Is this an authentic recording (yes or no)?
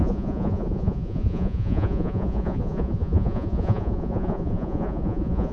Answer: no